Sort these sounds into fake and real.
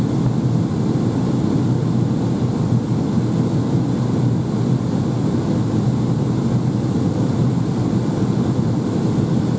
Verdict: real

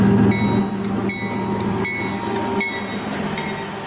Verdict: real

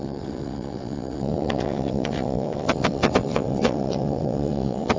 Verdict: fake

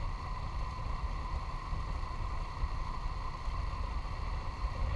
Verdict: real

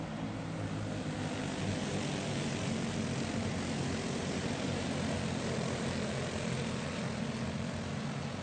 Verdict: real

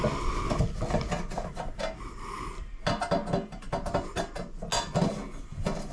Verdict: real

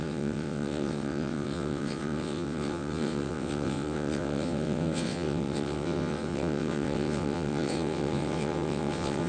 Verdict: fake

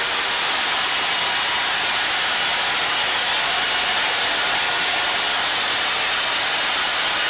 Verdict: real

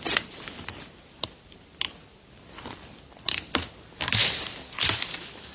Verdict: real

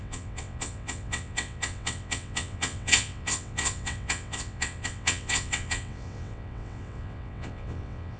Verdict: fake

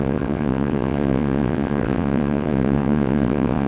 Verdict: fake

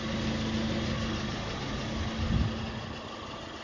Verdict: real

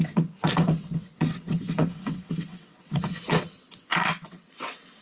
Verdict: fake